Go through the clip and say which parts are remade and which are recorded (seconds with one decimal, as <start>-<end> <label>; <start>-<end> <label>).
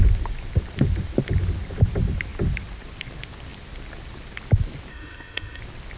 0.0-4.9 recorded; 4.9-5.6 remade; 5.6-6.0 recorded